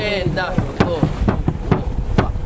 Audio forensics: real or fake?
real